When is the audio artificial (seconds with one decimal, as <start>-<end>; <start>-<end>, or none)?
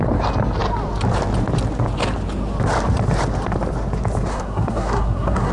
4.3-5.5